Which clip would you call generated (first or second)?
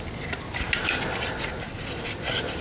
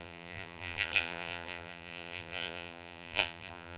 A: second